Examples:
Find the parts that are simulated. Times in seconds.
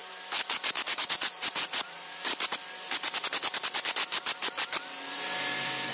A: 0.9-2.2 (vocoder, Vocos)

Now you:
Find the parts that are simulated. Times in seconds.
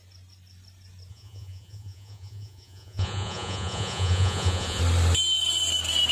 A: 1.1-4.8 (vocoder, Vocos)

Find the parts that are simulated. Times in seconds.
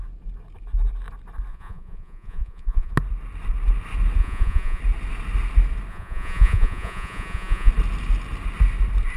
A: 1.5-2.9 (vocoder, Vocos); 4.2-4.8; 5.9-7.7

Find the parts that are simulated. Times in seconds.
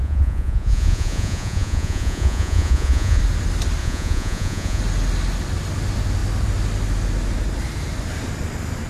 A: 0.0-3.2 (vocoder, Vocos); 3.8-4.8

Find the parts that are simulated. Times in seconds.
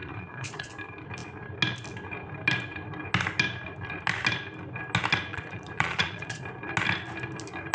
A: 0.0-0.7 (vocoder, Vocos); 5.3-6.4